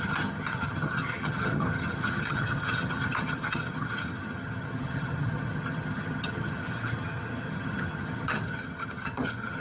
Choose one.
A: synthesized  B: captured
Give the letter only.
A